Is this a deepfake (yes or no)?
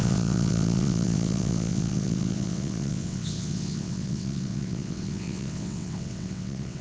yes